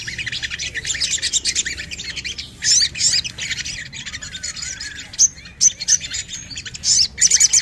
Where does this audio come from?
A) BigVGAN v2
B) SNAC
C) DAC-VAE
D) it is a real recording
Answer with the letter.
D